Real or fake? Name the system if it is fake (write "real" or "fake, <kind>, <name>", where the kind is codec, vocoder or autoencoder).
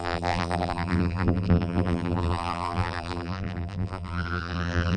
fake, vocoder, BigVGAN v2